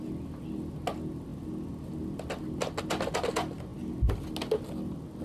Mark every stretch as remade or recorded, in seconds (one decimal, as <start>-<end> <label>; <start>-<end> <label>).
0.0-5.2 recorded